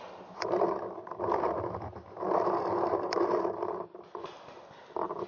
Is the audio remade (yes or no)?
no